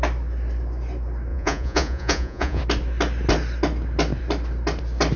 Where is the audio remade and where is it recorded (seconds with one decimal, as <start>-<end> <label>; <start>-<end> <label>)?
0.0-1.3 recorded; 1.3-2.6 remade; 2.6-5.2 recorded